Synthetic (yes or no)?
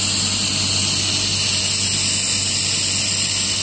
no